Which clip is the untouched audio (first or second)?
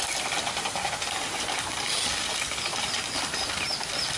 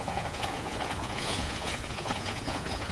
first